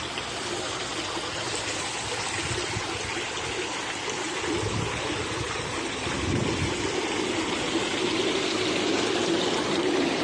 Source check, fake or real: real